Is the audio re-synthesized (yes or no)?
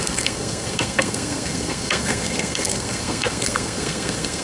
yes